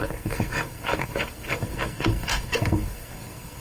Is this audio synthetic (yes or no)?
yes